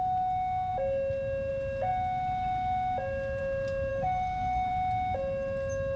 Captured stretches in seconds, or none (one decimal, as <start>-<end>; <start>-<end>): 0.0-3.9; 4.7-6.0